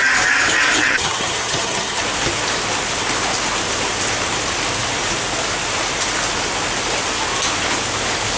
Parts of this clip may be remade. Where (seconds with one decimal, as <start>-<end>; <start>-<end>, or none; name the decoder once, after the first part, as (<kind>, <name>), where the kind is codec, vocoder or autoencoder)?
0.8-2.0 (vocoder, HiFi-GAN)